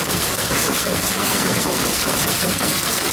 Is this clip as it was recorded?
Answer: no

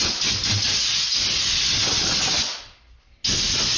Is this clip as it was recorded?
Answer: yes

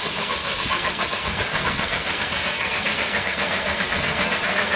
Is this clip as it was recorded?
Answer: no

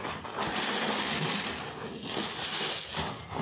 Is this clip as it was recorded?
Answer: yes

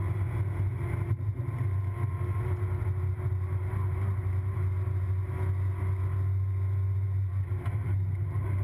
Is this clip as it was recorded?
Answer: yes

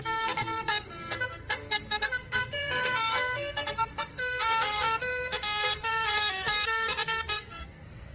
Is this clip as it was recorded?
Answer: no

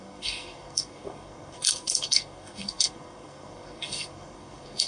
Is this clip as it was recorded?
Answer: no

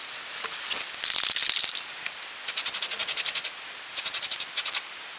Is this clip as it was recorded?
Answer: yes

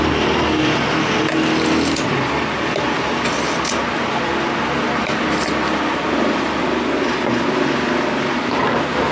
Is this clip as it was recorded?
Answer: yes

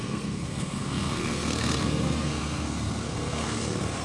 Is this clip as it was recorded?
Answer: no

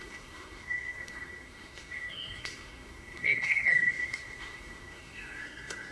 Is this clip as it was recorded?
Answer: no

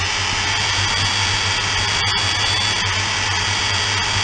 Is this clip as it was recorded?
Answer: yes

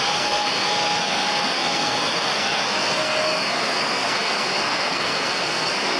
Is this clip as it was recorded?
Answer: no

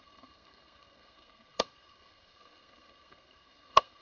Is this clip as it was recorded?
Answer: no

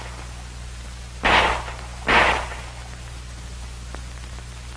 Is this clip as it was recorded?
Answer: yes